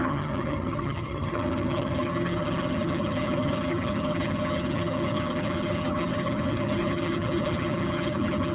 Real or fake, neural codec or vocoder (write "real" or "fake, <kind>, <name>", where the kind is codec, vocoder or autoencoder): fake, vocoder, HiFi-GAN